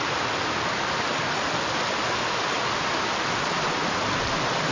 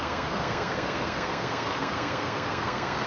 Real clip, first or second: first